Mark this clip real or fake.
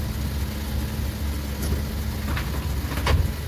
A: real